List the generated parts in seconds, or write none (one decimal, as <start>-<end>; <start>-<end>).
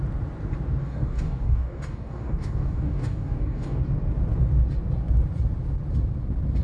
0.8-3.8